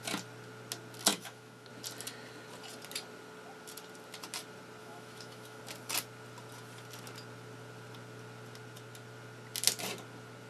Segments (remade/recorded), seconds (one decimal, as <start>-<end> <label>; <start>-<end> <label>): 0.0-1.1 recorded; 1.1-1.7 remade; 1.7-4.8 recorded; 4.8-5.6 remade; 5.6-10.5 recorded